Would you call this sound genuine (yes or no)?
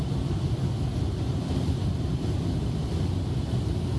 yes